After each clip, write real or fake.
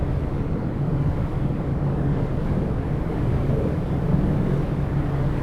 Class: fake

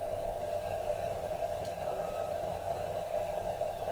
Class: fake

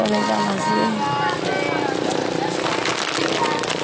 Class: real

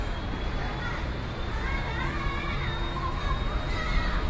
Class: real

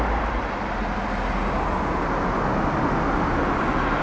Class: real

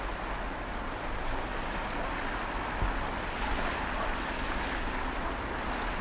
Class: real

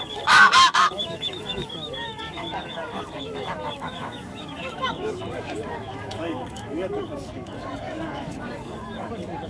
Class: fake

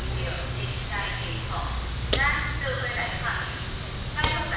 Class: real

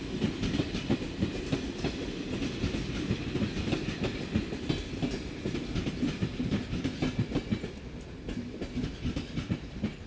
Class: real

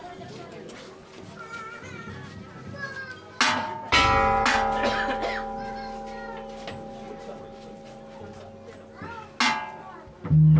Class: real